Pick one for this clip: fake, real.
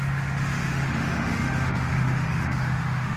fake